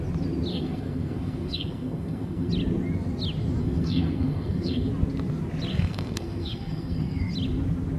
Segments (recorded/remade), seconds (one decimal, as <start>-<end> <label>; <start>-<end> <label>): 0.0-0.5 recorded; 0.5-2.5 remade; 2.5-3.6 recorded; 3.6-4.9 remade; 4.9-5.7 recorded; 5.7-7.2 remade; 7.2-8.0 recorded